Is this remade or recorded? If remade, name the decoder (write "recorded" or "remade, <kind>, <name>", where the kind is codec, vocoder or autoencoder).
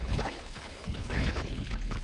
remade, codec, HILCodec